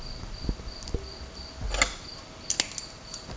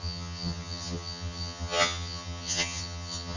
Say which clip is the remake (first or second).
second